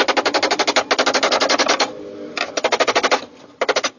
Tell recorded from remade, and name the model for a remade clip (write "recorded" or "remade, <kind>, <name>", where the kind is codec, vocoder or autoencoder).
recorded